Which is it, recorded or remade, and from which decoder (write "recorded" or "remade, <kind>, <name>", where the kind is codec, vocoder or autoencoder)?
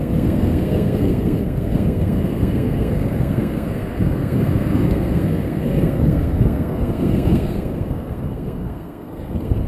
remade, codec, SNAC